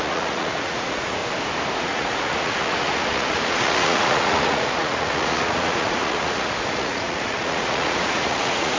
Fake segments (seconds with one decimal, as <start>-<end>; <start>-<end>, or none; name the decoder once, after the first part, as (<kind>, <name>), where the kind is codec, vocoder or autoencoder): 0.0-1.2 (vocoder, Vocos); 1.8-8.8